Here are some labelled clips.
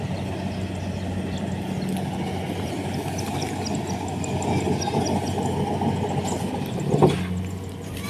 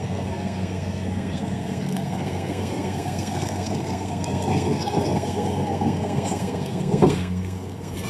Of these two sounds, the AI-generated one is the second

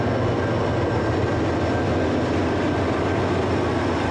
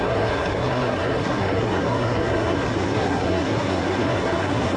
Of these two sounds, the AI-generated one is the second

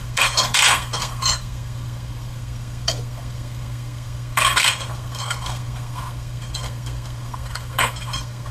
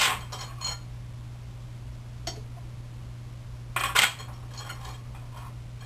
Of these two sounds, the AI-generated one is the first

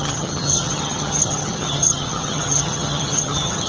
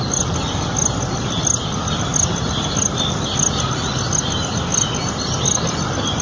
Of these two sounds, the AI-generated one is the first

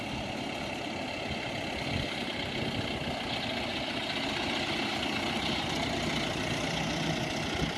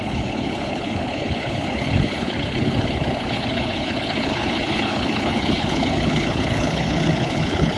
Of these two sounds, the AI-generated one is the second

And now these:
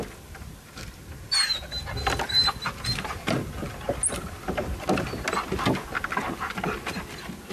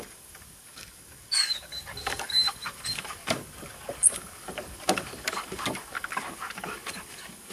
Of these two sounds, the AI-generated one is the second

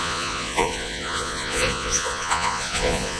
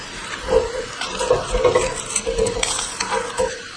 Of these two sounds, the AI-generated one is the first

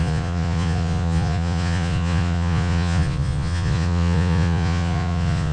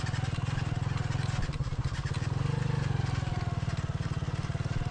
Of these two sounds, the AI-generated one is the first